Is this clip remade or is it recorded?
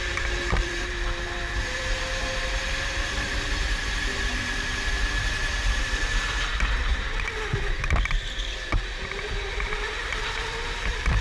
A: remade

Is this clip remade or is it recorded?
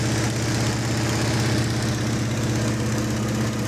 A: recorded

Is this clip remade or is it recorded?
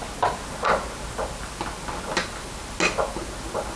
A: recorded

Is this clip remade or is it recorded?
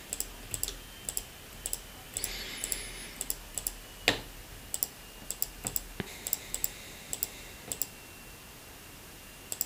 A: recorded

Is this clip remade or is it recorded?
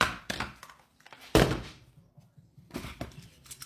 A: remade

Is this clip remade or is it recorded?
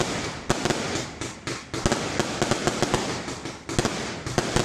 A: recorded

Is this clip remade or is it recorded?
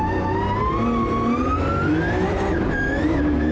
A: recorded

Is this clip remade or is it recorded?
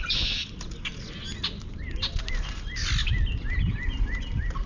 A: recorded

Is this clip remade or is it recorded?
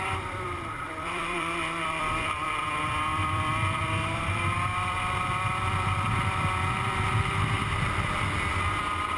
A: remade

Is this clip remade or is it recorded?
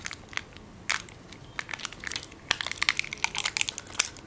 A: recorded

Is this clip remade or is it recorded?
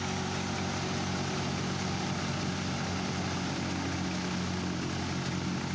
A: recorded